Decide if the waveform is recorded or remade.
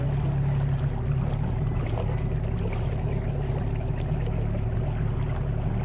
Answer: recorded